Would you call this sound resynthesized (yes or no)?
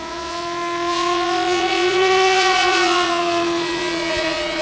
yes